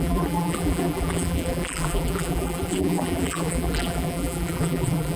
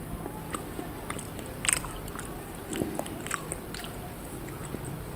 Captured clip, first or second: second